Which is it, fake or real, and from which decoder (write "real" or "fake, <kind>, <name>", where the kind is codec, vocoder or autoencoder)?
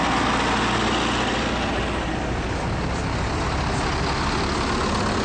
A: real